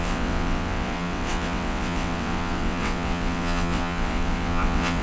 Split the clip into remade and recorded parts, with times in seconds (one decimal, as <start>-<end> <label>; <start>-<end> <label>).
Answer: 0.0-5.0 remade